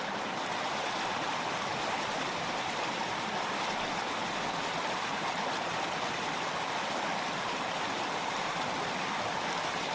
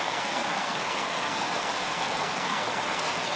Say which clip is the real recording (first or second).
first